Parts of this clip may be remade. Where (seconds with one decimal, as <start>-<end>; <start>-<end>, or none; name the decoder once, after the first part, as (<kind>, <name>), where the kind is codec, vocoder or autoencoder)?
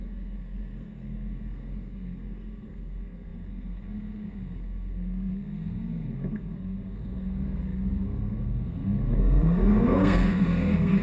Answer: 0.0-11.0 (codec, SNAC)